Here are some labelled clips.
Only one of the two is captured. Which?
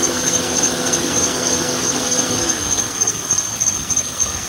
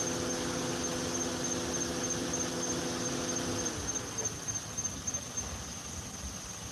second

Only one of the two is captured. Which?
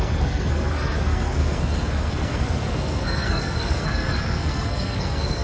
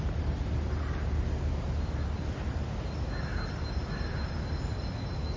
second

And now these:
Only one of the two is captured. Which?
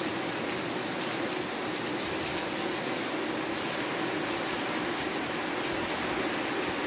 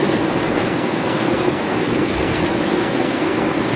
first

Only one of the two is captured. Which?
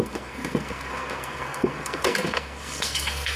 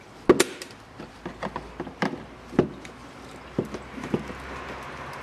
second